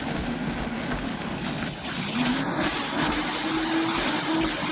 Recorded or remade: recorded